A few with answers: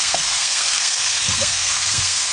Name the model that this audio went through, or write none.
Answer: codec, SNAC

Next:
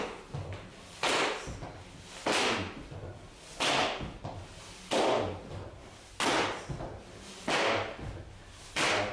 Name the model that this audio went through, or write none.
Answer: none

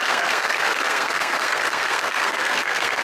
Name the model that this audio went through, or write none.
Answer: codec, SNAC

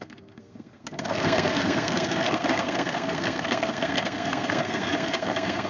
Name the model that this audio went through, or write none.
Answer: codec, SNAC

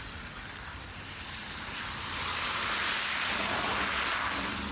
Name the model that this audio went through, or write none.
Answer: none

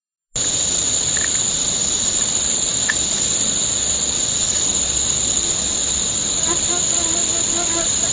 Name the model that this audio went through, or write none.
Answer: none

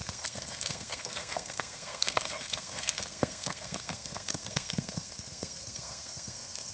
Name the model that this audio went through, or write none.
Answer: codec, SNAC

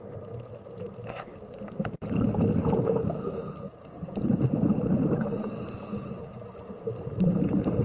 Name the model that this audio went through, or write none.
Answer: vocoder, BigVGAN v2